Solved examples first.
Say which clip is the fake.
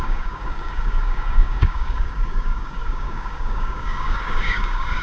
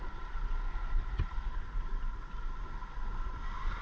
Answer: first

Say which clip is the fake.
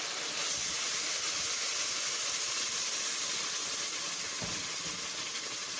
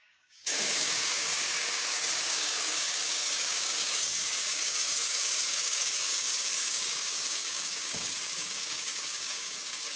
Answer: second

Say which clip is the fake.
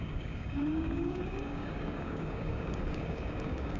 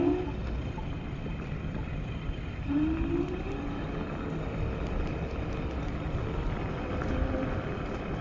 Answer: first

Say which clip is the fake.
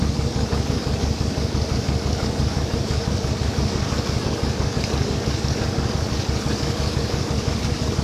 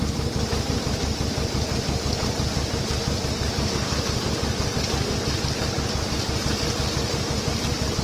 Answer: first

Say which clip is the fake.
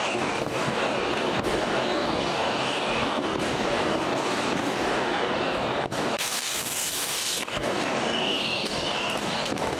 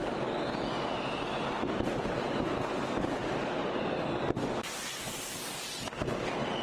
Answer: first